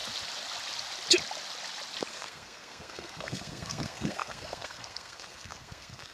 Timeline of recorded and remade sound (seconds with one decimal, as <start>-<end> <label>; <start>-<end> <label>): 0.0-2.1 recorded; 2.1-6.1 remade